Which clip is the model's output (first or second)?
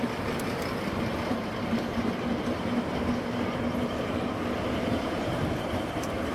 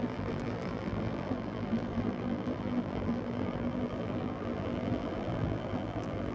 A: second